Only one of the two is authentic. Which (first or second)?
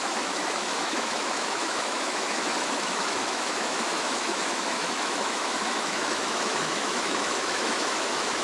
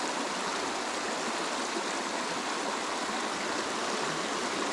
second